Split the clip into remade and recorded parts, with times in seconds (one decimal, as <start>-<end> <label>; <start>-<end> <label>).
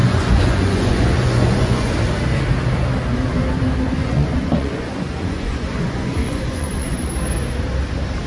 0.0-1.9 remade; 1.9-4.0 recorded; 4.0-7.1 remade; 7.1-8.3 recorded